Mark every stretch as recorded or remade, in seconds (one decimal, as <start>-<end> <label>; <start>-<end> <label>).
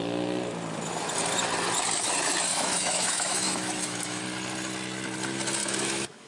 0.0-2.5 recorded; 2.5-4.2 remade; 4.2-5.6 recorded; 5.6-6.3 remade